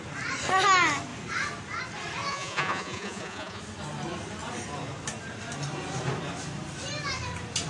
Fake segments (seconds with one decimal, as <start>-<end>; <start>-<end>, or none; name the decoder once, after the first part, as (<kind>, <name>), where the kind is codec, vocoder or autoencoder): 2.3-3.6 (vocoder, Vocos)